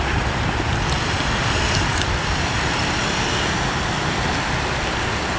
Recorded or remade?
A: recorded